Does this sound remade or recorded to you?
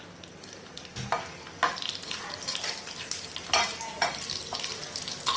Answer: recorded